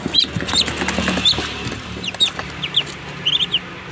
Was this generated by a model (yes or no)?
no